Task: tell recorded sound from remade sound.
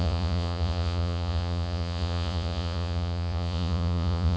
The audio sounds remade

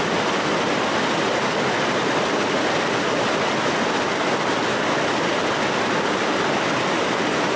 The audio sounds recorded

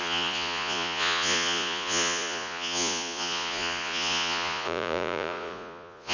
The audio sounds remade